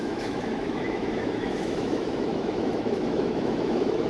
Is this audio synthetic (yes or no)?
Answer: yes